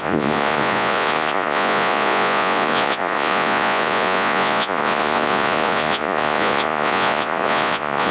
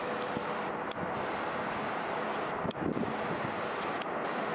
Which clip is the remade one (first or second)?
first